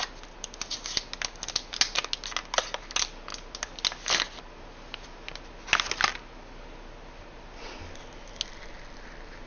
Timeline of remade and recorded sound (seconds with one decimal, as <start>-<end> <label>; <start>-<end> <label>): 0.0-9.5 recorded